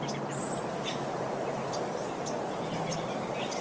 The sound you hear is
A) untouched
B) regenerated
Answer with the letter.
A